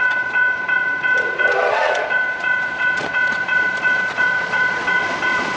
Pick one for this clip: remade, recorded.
remade